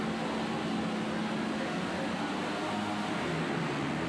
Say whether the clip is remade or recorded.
recorded